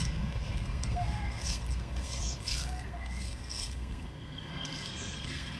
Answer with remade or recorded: remade